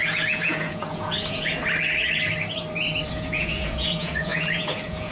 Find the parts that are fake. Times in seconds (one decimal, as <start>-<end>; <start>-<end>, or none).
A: 0.0-1.6; 3.1-5.1

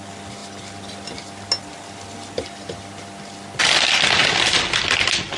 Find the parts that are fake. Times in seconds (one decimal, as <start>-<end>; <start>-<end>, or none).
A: none